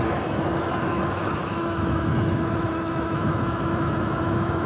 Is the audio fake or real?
fake